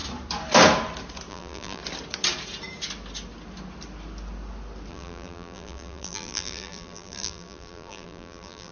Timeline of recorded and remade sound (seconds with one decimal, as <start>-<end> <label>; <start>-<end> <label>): 0.0-1.3 recorded; 1.3-1.8 remade; 1.8-4.9 recorded; 4.9-8.7 remade